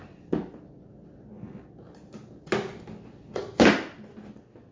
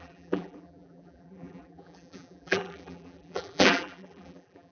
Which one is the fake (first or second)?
second